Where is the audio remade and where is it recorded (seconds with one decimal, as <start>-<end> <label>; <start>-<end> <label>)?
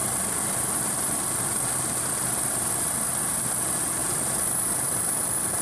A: 0.0-3.0 remade; 3.0-4.0 recorded; 4.0-5.6 remade